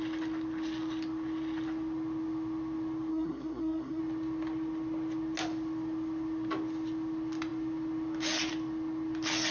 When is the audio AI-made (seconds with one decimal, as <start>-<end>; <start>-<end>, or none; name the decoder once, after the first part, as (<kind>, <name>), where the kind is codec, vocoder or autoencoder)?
3.1-4.0 (codec, SNAC)